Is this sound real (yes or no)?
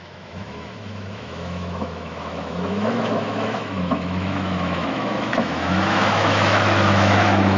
no